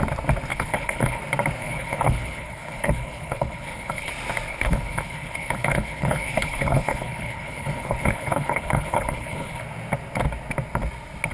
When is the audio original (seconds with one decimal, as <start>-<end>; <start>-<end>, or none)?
0.0-0.5; 1.2-1.6; 4.1-4.5; 9.6-11.3